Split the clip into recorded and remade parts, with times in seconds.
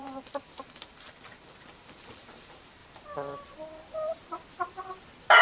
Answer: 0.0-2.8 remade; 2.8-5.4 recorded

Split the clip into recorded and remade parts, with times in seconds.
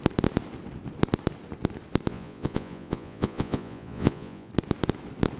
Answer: 0.0-2.1 recorded; 2.1-4.5 remade; 4.5-5.4 recorded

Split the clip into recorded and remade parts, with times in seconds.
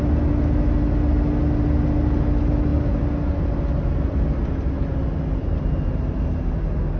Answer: 0.0-7.0 recorded